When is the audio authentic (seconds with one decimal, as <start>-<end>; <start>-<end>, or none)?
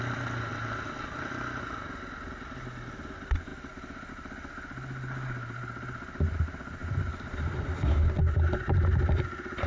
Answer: 0.0-9.7